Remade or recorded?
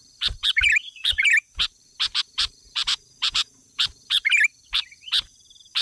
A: remade